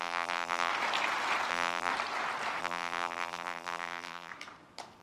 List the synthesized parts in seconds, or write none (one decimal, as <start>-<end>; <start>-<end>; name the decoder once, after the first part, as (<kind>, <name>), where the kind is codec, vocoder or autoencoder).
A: 0.0-0.7 (vocoder, BigVGAN v2); 1.5-1.9; 2.6-4.3